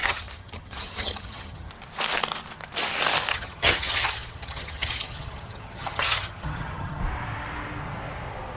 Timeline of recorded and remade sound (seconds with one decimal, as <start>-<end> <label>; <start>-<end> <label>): 0.0-1.7 remade; 1.7-3.3 recorded; 3.3-7.0 remade; 7.0-8.6 recorded